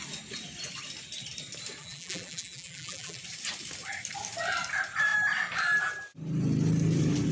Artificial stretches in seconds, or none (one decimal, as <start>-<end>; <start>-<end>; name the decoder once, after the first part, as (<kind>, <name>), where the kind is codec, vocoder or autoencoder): 1.8-3.2 (vocoder, BigVGAN v2)